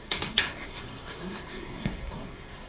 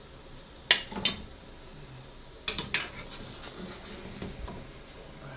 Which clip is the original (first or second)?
second